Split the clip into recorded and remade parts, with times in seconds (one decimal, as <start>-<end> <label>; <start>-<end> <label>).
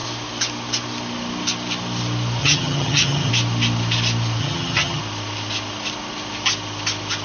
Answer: 0.0-2.4 recorded; 2.4-3.3 remade; 3.3-4.4 recorded; 4.4-5.0 remade; 5.0-7.2 recorded